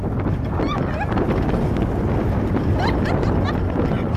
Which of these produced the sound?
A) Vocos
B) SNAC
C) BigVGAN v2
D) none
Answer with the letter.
D